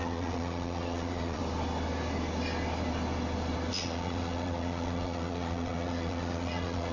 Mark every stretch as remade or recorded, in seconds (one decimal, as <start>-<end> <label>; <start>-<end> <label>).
0.0-1.4 remade; 1.4-3.7 recorded; 3.7-6.9 remade